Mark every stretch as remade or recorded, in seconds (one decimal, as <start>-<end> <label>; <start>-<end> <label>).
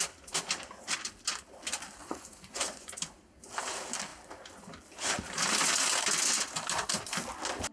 0.0-2.0 recorded; 2.0-2.9 remade; 2.9-7.7 recorded